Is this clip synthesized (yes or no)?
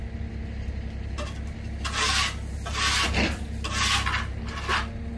no